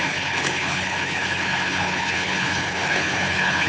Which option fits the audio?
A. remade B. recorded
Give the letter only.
A